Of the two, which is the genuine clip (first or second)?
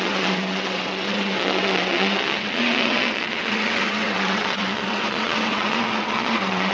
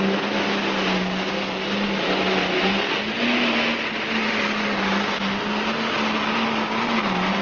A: second